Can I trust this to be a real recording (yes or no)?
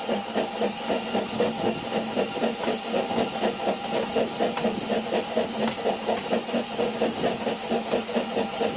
yes